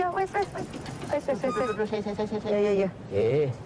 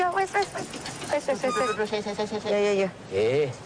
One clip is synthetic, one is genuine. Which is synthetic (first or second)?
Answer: first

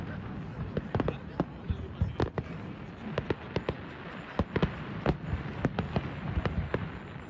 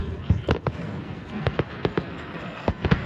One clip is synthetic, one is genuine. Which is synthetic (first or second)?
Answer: second